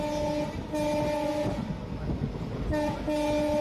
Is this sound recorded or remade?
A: recorded